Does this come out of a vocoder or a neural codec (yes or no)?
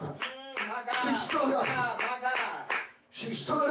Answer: yes